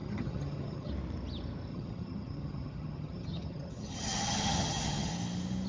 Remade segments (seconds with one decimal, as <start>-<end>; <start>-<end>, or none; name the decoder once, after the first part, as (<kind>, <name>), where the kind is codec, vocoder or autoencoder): 0.0-0.9 (vocoder, HiFi-GAN); 1.7-5.1